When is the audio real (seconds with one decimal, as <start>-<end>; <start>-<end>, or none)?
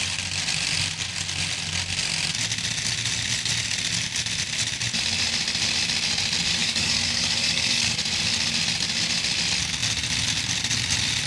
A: 0.0-6.6; 8.0-11.3